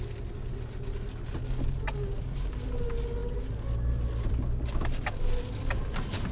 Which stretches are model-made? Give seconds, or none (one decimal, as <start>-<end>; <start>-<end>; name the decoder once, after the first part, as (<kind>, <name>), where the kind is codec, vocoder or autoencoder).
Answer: none